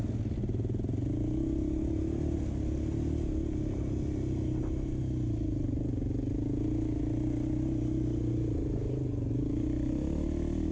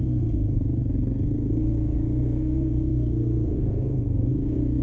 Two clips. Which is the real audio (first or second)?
first